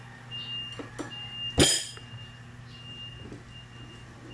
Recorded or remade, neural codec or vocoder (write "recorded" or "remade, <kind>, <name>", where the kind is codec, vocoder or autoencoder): recorded